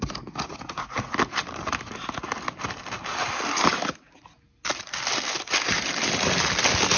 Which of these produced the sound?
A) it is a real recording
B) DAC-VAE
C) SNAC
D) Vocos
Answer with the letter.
A